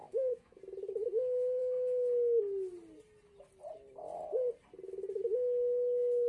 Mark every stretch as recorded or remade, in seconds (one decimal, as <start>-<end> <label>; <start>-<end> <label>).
0.0-0.6 remade; 0.6-6.3 recorded